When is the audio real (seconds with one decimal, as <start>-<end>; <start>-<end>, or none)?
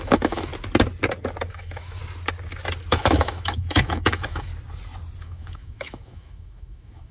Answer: 0.5-1.5; 2.0-2.9; 4.5-5.2